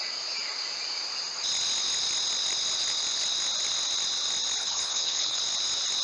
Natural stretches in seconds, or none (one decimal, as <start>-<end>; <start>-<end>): 0.0-4.6; 5.4-6.0